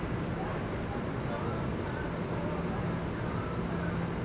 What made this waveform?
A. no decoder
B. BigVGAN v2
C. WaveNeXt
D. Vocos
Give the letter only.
A